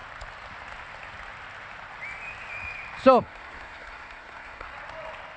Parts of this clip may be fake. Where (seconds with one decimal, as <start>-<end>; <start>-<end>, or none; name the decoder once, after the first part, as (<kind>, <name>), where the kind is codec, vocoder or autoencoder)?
3.2-4.7 (codec, SNAC)